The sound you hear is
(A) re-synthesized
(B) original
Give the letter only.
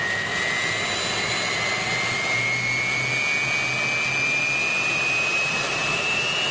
B